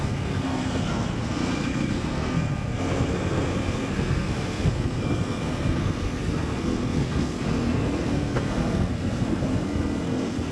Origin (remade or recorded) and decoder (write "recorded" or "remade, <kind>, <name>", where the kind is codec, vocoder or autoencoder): remade, codec, SNAC